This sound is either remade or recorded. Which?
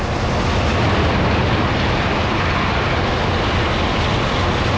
recorded